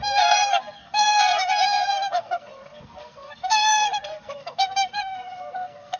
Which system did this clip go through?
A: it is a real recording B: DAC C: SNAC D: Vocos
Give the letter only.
C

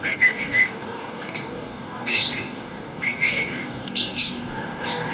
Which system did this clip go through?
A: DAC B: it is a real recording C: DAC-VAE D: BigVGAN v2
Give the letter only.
A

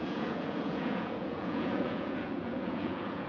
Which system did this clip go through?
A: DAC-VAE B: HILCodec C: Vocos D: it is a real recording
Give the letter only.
C